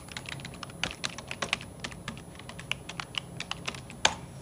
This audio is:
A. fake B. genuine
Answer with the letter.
B